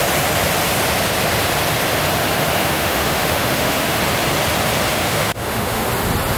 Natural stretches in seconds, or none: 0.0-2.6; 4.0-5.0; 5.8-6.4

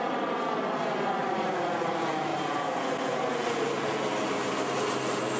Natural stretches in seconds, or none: 0.0-5.4

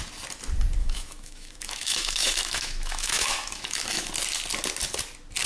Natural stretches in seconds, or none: 0.0-0.8; 4.1-5.5

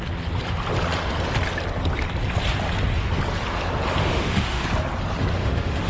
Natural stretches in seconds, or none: 0.0-4.0; 4.6-5.4

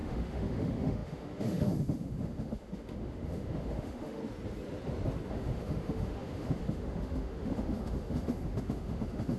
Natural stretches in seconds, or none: 4.2-5.3

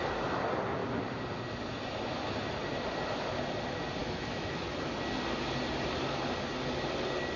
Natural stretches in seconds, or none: 0.0-4.0; 4.9-7.4

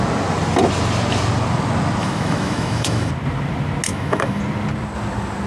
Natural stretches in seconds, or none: 0.0-2.0; 3.1-3.9; 4.4-5.5

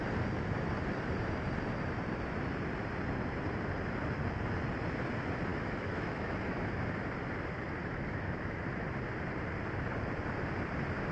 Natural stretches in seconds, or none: 0.0-5.5; 6.7-7.8; 8.6-11.1